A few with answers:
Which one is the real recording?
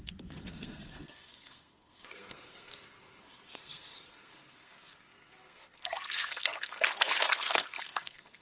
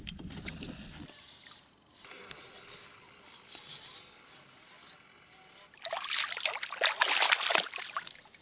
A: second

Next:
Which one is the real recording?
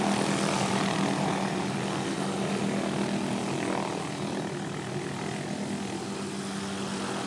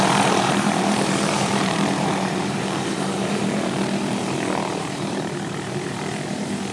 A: first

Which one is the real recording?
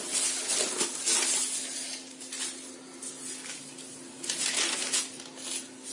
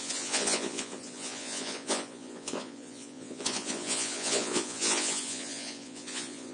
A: first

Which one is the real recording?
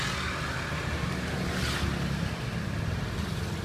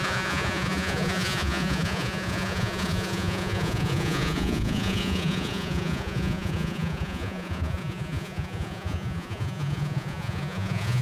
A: first